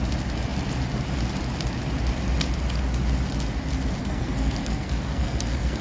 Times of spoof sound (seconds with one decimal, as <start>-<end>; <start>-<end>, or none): 4.0-5.8